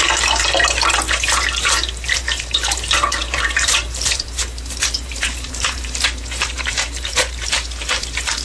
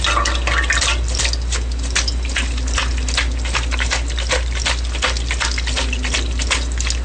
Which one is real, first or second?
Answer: second